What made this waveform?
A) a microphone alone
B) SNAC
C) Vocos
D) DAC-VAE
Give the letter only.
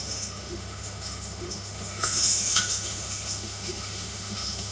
D